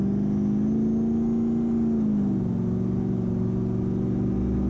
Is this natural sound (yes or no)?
yes